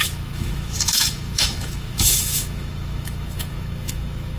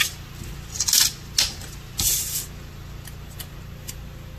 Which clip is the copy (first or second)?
first